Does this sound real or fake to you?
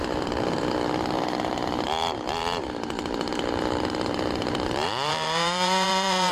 fake